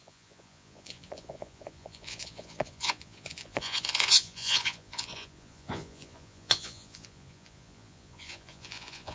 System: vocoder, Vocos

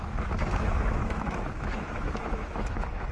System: autoencoder, DAC-VAE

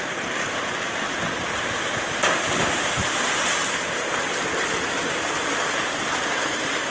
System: none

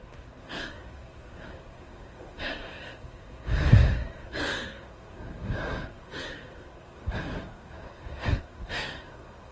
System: codec, SNAC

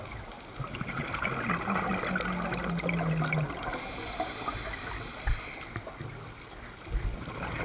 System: none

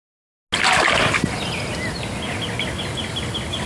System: none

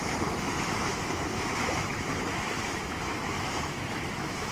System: autoencoder, DAC-VAE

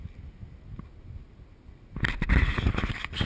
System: none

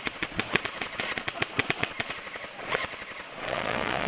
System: vocoder, Vocos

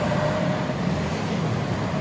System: vocoder, BigVGAN v2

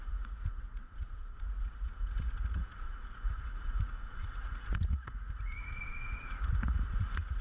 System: vocoder, Vocos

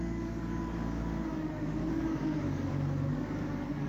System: codec, DAC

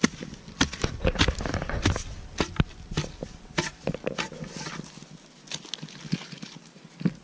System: none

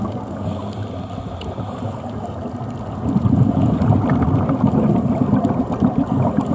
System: none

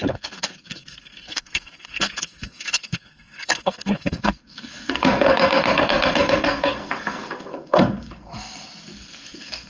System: codec, SNAC